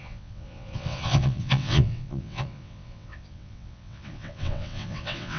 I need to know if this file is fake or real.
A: fake